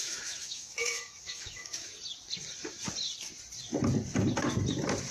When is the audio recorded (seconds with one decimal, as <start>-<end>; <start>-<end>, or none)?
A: 1.9-5.1